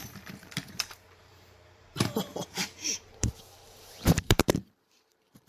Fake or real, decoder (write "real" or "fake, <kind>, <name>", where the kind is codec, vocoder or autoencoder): fake, vocoder, BigVGAN v2